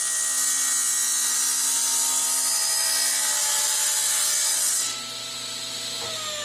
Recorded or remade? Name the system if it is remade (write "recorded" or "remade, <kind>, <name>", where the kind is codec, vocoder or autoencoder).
recorded